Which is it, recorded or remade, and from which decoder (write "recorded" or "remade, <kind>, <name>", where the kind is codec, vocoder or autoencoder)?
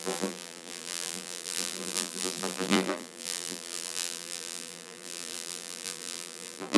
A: remade, vocoder, BigVGAN v2